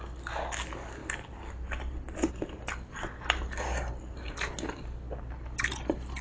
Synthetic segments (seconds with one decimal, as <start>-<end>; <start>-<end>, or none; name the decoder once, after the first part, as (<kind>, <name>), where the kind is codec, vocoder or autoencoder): none

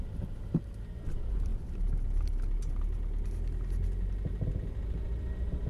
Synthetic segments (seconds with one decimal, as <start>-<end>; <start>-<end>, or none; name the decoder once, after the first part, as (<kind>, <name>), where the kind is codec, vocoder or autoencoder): none

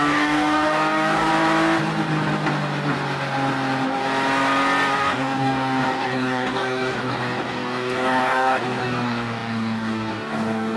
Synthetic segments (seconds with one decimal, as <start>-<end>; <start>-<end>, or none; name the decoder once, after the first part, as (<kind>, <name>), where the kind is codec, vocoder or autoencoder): 0.0-1.3 (codec, DAC); 5.0-10.8

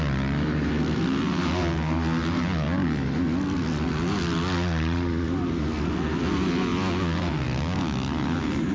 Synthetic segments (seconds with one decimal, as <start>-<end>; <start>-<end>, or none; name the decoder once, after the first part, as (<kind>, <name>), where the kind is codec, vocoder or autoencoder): none

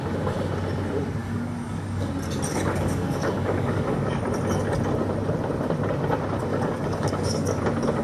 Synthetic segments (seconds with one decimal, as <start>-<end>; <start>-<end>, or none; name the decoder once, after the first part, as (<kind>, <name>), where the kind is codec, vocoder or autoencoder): 1.2-2.1 (codec, DAC); 2.5-4.2; 6.5-7.6

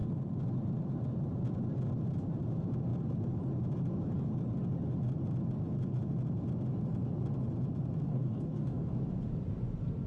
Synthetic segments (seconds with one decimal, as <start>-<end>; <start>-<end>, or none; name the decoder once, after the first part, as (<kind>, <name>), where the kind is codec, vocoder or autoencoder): 8.1-8.9 (codec, DAC)

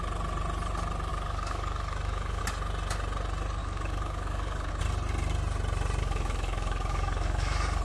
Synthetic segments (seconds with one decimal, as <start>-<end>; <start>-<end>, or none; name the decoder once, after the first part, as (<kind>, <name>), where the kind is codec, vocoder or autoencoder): 1.1-2.4 (codec, DAC); 3.6-4.7; 6.0-7.8

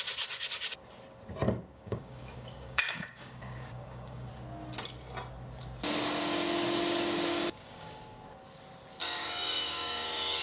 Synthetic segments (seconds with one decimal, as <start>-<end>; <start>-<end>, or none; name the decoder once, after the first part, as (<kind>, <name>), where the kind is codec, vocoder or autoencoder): 1.7-4.3 (codec, DAC); 7.3-8.0; 9.0-10.4